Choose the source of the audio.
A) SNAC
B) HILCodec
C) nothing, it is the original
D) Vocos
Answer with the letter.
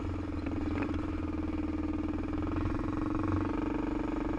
C